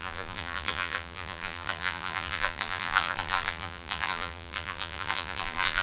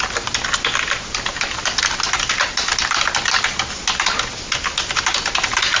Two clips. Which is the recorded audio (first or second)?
second